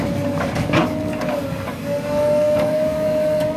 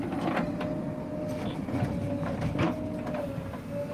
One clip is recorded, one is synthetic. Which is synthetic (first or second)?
first